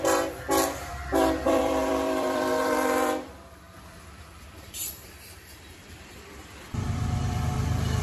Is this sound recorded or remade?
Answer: remade